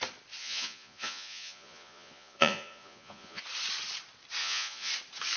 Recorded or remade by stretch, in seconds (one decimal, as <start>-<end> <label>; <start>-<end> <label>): 0.0-0.4 recorded; 0.4-3.4 remade; 3.4-4.4 recorded; 4.4-4.9 remade; 4.9-5.4 recorded